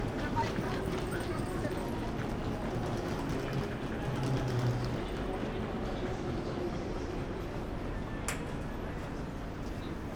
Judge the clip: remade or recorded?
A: recorded